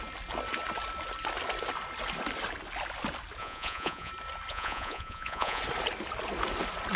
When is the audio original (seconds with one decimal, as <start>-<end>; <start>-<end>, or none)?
0.0-3.4; 4.1-4.5; 5.6-7.0